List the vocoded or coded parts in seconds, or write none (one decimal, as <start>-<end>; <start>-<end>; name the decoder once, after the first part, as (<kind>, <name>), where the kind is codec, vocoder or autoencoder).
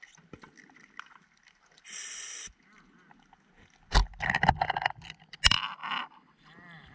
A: none